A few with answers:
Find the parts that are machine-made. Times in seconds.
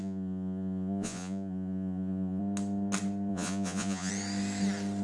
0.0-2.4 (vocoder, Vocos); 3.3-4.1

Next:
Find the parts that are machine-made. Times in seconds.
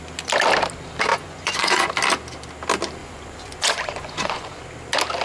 1.1-1.9 (vocoder, Vocos); 3.0-4.6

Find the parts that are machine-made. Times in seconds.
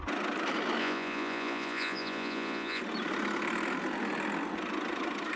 0.8-2.8 (vocoder, Vocos)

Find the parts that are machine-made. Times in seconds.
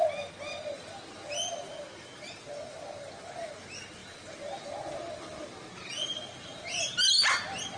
none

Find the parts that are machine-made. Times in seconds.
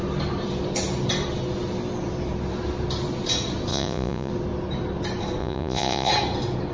3.7-4.3 (vocoder, Vocos); 5.4-6.1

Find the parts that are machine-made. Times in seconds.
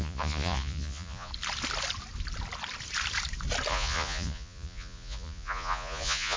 0.0-1.3 (vocoder, Vocos); 3.7-6.4